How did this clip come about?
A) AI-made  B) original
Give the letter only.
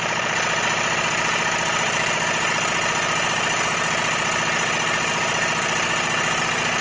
B